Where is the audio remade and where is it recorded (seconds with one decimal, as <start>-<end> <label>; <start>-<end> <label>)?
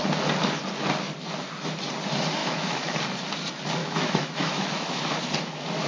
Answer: 0.0-2.4 recorded; 2.4-3.0 remade; 3.0-3.8 recorded; 3.8-5.2 remade; 5.2-5.9 recorded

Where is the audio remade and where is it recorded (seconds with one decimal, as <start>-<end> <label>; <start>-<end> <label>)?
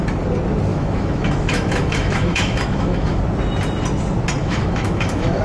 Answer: 0.0-0.7 recorded; 0.7-3.2 remade; 3.2-4.4 recorded; 4.4-5.4 remade